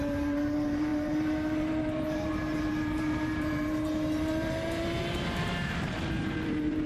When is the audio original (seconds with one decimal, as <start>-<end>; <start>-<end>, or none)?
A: none